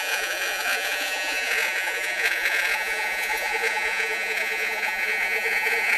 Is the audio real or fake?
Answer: fake